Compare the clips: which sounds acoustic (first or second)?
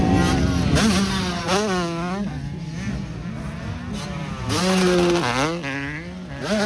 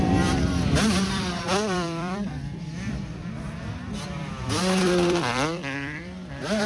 first